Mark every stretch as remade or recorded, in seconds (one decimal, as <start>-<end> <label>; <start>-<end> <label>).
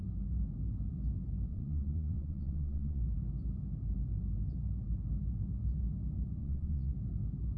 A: 0.0-1.5 recorded; 1.5-3.0 remade; 3.0-6.4 recorded; 6.4-6.9 remade; 6.9-7.6 recorded